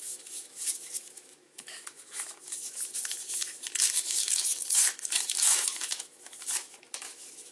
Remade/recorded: remade